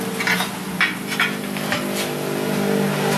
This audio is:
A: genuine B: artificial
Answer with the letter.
A